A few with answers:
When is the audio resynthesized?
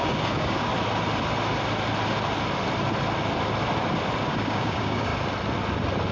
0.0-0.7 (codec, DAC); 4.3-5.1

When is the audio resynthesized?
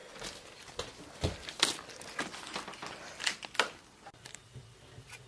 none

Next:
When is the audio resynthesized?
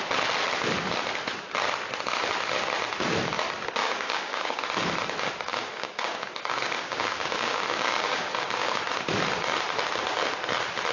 3.8-4.6 (codec, DAC); 5.5-8.8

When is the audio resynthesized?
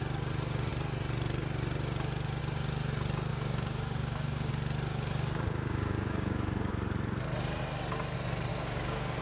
3.3-4.5 (codec, DAC); 4.9-6.7; 8.5-9.2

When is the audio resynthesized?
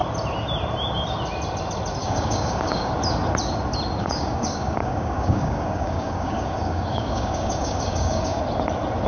2.0-2.9 (codec, DAC); 4.0-8.4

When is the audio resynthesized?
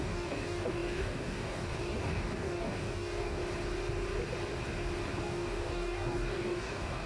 0.0-3.4 (codec, DAC); 5.2-7.1